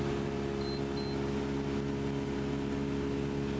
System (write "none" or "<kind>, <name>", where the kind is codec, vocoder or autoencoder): none